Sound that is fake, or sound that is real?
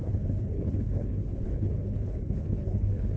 fake